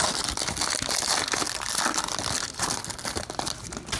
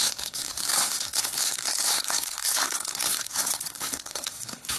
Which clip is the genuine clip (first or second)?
first